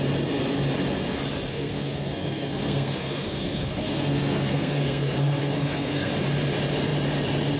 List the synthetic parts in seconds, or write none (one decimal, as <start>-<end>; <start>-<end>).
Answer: 1.5-6.1